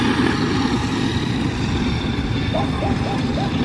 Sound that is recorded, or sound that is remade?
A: recorded